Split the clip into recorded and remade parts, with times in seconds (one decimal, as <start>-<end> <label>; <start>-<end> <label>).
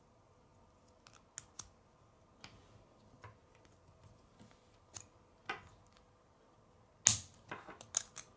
0.0-8.4 recorded